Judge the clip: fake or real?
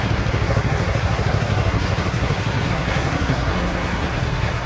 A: fake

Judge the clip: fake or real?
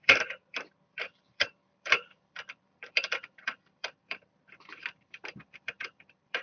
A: fake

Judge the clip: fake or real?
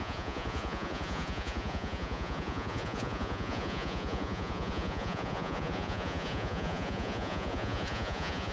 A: fake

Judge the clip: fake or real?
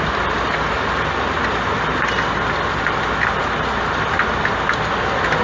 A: real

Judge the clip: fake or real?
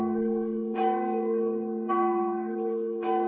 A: fake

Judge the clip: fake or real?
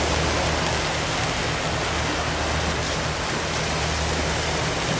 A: real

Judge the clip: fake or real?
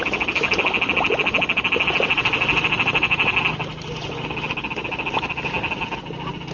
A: real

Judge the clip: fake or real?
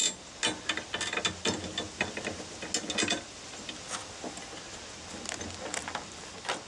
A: real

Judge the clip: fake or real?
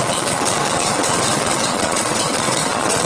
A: fake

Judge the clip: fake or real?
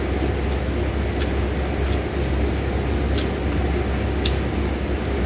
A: real